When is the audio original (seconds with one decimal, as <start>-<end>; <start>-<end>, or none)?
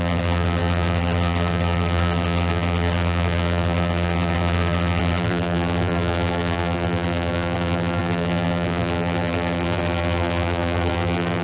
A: none